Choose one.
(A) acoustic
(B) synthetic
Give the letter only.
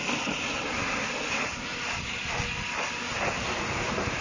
A